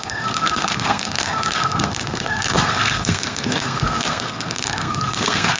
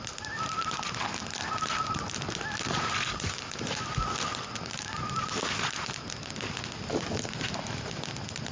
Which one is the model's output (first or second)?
first